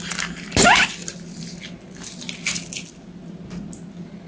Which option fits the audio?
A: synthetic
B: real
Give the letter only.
B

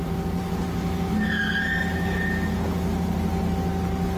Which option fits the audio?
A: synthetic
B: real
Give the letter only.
B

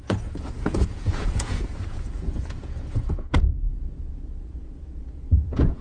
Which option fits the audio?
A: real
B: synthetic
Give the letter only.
B